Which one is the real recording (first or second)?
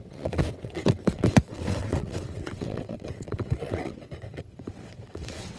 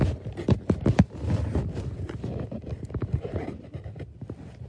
second